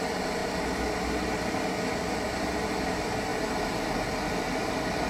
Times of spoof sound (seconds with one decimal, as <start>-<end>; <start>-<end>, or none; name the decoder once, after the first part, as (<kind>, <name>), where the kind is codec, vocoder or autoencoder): 3.3-4.1 (vocoder, BigVGAN v2)